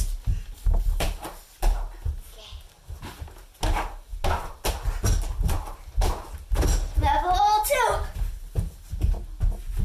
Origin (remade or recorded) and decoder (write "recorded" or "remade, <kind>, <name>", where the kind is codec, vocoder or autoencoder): recorded